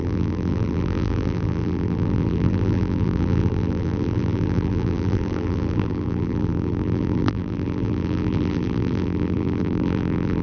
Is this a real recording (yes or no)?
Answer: no